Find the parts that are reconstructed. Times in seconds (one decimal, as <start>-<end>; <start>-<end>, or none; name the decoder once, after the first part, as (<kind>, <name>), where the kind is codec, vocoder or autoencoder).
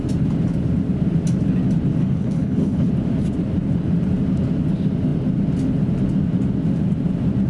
2.0-2.9 (codec, HILCodec)